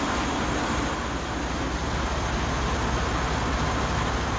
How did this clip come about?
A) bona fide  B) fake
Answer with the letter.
A